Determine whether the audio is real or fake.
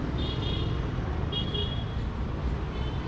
real